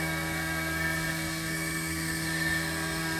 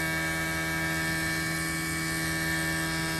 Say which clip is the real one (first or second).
second